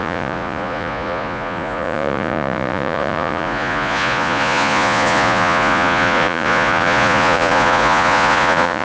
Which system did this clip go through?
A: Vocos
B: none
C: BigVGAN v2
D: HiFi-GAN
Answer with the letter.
A